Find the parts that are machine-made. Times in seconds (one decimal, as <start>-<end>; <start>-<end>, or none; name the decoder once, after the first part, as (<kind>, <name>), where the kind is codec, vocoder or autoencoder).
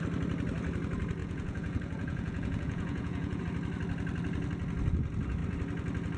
1.2-3.4 (vocoder, Vocos)